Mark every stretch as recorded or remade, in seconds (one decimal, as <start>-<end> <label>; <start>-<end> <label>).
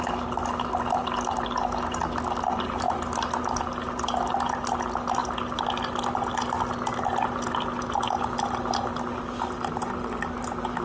0.0-10.8 recorded